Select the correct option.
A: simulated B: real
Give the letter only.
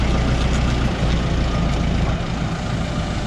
B